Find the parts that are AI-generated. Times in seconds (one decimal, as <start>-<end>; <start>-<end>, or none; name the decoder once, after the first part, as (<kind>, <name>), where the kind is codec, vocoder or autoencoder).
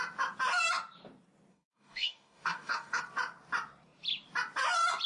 1.5-3.0 (codec, DAC)